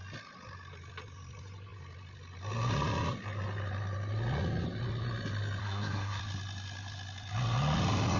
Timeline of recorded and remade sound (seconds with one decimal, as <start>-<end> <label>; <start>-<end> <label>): 0.0-5.6 recorded; 5.6-6.2 remade; 6.2-8.2 recorded